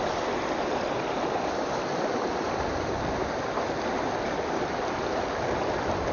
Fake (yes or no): no